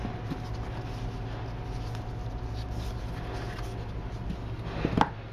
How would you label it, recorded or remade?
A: recorded